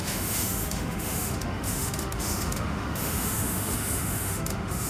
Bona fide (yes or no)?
no